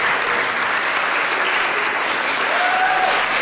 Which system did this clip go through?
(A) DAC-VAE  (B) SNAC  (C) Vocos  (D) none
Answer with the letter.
D